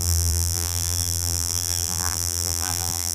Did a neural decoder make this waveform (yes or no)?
yes